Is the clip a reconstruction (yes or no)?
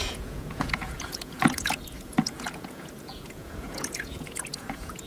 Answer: yes